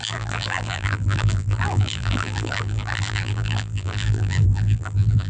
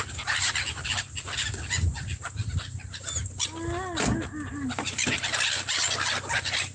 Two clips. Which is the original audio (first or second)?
second